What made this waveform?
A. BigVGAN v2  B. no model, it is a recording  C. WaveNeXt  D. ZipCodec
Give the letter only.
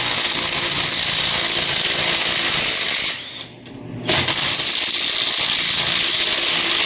B